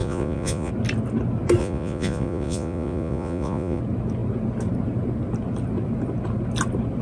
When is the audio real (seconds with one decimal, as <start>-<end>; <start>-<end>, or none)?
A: 0.7-1.6; 3.8-7.0